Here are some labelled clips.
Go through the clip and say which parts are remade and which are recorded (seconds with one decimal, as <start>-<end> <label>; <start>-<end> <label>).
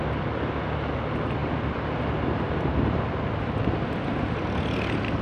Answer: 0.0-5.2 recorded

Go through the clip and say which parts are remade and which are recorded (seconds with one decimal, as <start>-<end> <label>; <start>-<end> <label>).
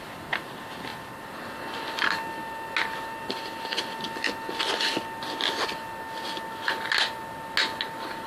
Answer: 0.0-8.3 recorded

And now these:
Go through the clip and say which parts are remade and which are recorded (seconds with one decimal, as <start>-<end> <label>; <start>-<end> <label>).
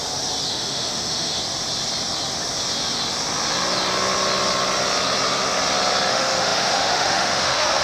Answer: 0.0-0.5 recorded; 0.5-1.4 remade; 1.4-6.1 recorded; 6.1-7.8 remade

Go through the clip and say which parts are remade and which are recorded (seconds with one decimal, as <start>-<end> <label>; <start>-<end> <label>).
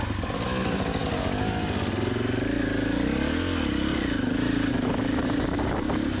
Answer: 0.0-6.2 recorded